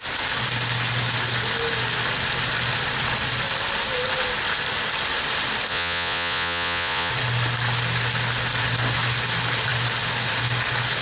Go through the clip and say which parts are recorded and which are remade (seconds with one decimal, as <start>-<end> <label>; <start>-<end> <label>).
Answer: 0.0-5.7 recorded; 5.7-7.1 remade; 7.1-11.0 recorded